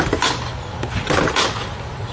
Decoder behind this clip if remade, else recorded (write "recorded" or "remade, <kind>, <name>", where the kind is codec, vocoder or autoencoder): recorded